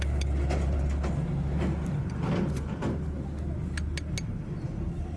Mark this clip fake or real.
real